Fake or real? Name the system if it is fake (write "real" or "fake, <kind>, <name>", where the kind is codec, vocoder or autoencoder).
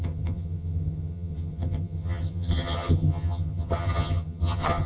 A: fake, vocoder, HiFi-GAN